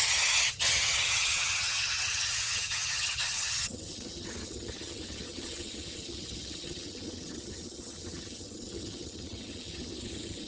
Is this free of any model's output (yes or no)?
no